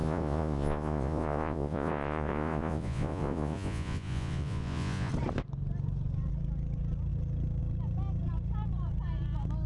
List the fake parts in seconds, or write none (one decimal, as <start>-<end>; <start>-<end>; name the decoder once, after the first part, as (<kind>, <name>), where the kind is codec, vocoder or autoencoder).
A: 0.0-5.1 (vocoder, Vocos)

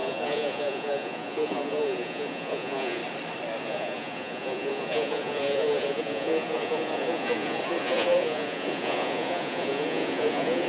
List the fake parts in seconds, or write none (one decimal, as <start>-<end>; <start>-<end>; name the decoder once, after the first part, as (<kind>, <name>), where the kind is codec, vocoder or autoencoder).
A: 0.0-3.0 (vocoder, Vocos); 3.6-10.7

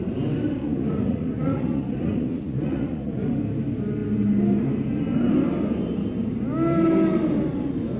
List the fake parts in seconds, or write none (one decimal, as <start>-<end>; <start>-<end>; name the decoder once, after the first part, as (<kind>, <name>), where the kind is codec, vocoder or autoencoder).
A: 0.6-3.3 (vocoder, Vocos)

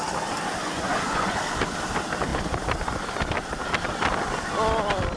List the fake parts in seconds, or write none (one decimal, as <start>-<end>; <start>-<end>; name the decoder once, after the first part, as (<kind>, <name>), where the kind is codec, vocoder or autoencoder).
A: 0.6-1.4 (vocoder, Vocos)

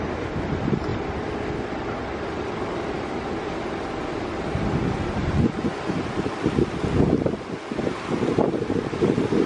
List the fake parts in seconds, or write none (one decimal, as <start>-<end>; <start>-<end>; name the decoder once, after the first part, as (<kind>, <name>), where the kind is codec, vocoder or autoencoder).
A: 5.2-5.8 (vocoder, Vocos)

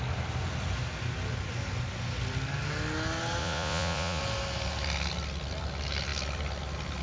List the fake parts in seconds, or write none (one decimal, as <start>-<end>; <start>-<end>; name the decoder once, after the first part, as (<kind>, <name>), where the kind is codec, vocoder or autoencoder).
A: 3.4-4.2 (vocoder, Vocos)

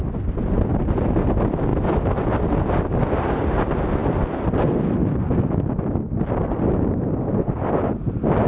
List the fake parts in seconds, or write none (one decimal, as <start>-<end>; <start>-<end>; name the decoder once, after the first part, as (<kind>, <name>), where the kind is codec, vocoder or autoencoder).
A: none